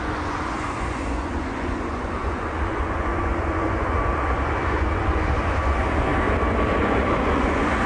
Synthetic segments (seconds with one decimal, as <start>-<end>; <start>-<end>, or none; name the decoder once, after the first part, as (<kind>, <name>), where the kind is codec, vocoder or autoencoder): 0.0-6.1 (vocoder, Vocos); 6.8-7.9